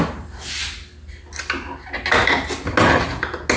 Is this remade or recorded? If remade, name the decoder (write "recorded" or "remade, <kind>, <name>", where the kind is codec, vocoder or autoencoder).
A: recorded